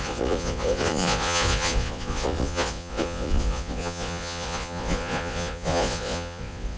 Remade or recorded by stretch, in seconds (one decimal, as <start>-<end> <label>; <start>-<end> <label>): 0.0-6.8 remade